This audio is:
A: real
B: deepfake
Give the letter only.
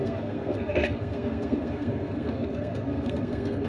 B